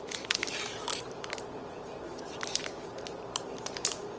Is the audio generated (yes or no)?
yes